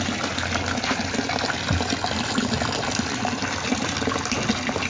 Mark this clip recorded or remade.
recorded